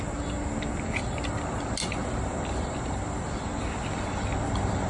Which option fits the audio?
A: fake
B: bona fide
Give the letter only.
B